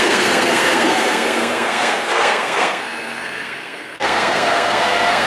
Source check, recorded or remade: remade